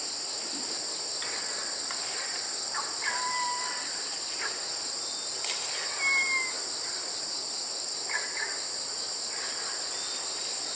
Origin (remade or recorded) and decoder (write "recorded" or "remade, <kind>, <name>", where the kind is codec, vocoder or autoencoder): recorded